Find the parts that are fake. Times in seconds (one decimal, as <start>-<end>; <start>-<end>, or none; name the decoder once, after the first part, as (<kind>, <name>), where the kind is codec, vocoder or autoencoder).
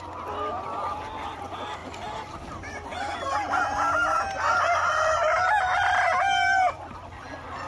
none